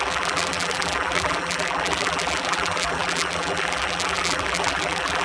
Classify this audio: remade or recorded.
remade